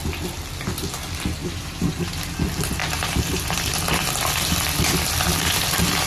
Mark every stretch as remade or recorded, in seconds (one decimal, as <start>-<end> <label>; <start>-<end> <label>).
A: 0.0-1.4 recorded; 1.4-2.1 remade; 2.1-2.8 recorded; 2.8-3.6 remade; 3.6-6.1 recorded